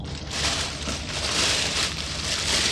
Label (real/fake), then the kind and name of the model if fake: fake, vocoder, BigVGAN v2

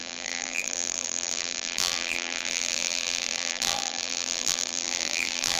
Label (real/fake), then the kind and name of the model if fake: fake, vocoder, BigVGAN v2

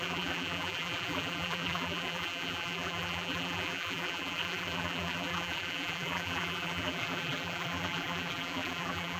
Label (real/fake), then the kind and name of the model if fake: fake, vocoder, BigVGAN v2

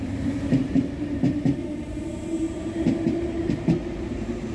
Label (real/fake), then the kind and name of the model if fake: fake, vocoder, BigVGAN v2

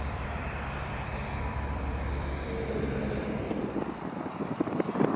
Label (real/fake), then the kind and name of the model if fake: fake, vocoder, BigVGAN v2